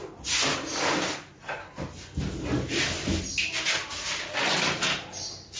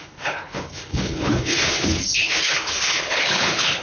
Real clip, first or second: first